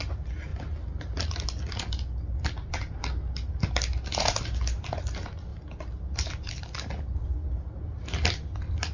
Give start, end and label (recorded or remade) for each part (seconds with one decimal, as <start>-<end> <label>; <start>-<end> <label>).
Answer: 0.0-8.9 recorded